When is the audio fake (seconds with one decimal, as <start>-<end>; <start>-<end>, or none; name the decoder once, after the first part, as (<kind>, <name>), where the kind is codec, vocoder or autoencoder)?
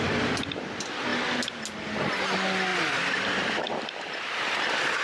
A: 2.7-5.0 (vocoder, BigVGAN v2)